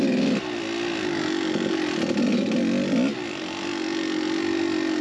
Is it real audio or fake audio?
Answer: real